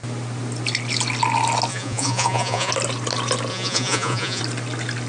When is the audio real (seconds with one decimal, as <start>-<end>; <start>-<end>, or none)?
0.0-1.7; 2.7-3.5; 4.4-5.1